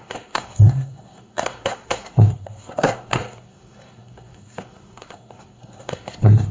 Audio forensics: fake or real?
fake